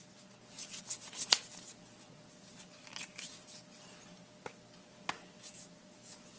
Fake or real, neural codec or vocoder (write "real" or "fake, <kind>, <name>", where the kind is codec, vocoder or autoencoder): real